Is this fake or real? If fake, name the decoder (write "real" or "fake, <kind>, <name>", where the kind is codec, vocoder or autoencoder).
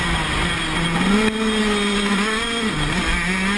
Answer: real